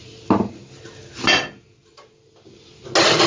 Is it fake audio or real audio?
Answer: real